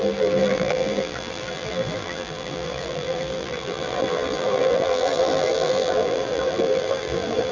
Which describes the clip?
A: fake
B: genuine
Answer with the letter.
A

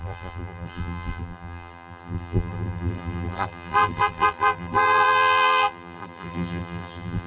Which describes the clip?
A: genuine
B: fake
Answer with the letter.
B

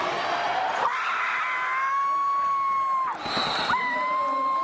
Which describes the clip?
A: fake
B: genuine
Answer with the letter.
B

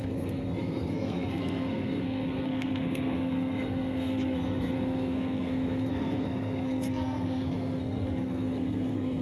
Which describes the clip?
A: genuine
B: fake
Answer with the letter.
B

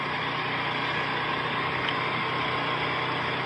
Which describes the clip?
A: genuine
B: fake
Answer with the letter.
A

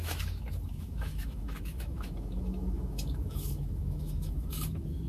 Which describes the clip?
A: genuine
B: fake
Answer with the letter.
B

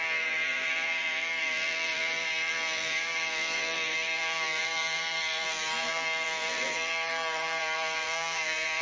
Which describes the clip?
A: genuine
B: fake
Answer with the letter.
B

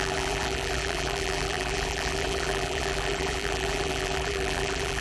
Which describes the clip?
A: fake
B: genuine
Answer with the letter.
A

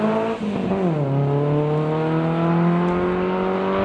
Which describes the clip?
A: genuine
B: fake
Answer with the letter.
A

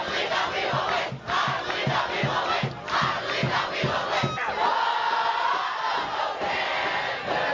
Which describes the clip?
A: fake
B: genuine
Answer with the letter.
B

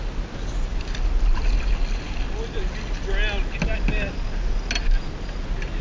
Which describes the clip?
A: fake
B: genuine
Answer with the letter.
B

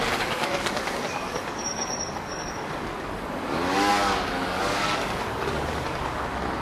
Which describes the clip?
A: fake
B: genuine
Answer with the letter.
A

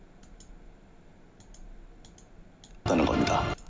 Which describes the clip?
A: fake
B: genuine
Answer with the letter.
B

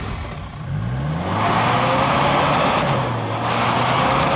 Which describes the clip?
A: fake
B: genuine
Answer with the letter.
B